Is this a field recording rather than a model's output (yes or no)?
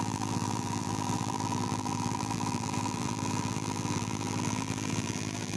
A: no